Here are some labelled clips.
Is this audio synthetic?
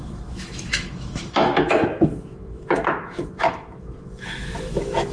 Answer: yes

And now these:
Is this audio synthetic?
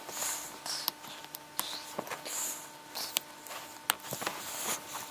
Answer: no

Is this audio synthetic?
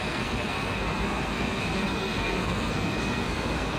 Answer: yes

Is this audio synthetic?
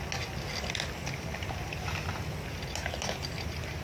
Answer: no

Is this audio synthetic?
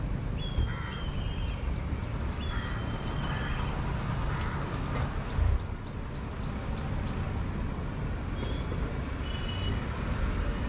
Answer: no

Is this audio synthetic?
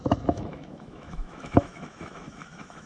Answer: yes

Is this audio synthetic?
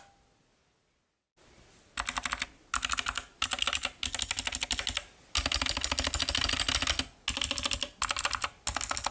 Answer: no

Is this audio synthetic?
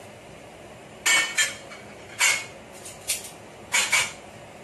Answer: no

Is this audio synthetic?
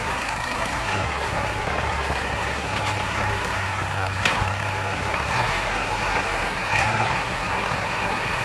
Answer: yes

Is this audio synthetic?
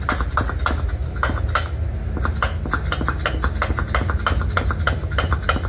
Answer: no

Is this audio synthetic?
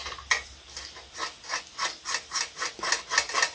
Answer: no